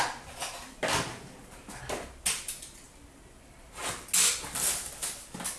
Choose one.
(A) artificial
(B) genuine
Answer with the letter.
B